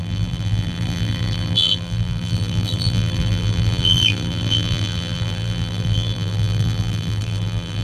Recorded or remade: remade